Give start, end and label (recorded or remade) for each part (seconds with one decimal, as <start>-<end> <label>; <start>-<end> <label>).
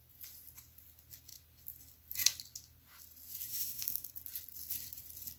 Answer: 0.0-3.5 recorded; 3.5-4.1 remade; 4.1-5.4 recorded